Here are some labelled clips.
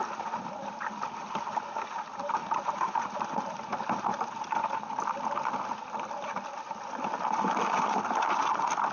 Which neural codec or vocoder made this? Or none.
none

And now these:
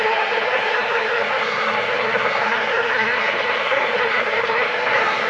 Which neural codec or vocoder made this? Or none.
codec, SNAC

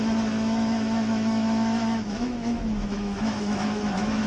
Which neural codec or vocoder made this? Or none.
autoencoder, DAC-VAE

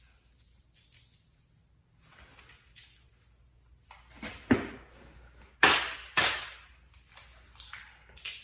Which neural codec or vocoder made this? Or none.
none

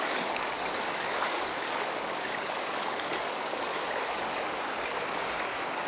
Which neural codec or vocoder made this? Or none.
codec, DAC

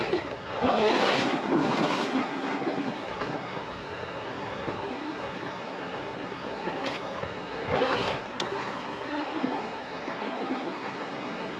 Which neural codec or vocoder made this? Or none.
codec, SNAC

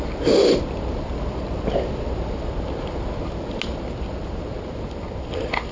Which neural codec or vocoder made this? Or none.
none